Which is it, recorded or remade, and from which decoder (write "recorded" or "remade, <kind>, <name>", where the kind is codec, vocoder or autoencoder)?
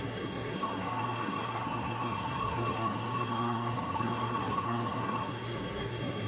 remade, codec, SNAC